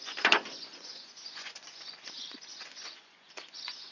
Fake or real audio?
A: fake